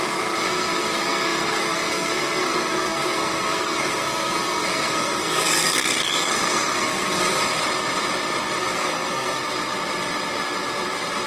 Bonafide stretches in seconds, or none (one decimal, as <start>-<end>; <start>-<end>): 7.5-8.6; 9.4-11.3